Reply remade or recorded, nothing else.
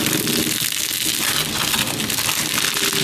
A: recorded